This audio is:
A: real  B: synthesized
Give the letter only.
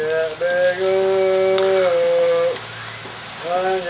A